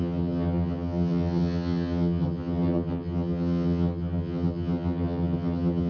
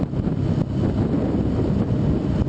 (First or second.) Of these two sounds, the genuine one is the second